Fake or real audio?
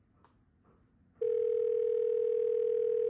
real